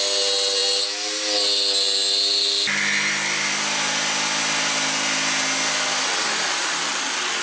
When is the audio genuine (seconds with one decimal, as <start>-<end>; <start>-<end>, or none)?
0.0-7.4